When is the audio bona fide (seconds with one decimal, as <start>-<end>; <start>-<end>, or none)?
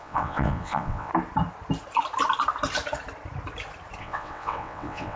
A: 1.1-4.0